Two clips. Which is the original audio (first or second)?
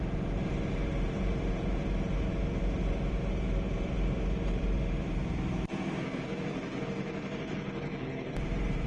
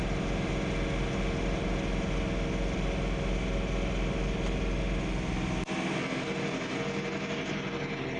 second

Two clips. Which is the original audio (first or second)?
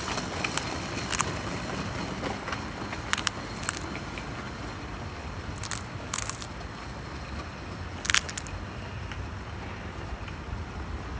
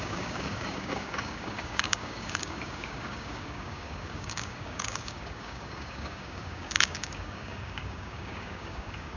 first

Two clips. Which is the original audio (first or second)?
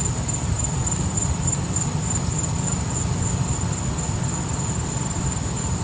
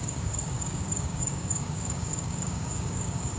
first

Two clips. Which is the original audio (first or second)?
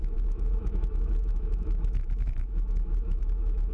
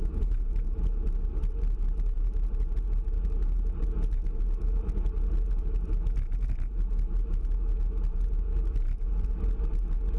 second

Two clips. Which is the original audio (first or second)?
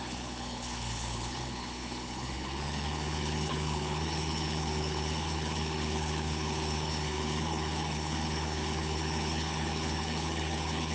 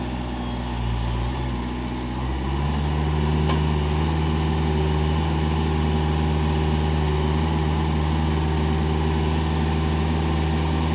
second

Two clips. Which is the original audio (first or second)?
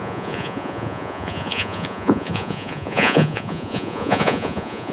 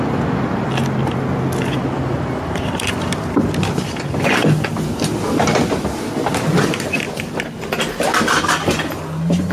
second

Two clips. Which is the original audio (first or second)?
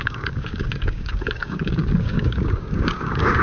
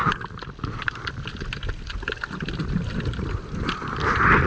second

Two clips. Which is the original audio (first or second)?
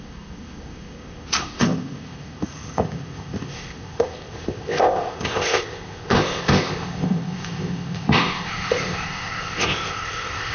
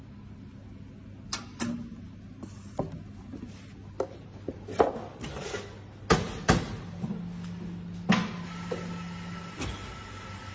second